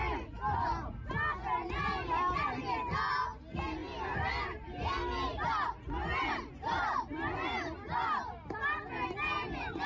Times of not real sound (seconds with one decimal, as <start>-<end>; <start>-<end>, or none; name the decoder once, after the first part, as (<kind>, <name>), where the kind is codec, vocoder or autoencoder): none

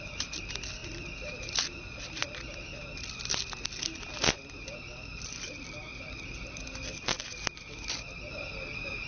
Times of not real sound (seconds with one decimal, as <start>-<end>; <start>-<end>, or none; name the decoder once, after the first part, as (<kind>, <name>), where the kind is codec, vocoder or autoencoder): none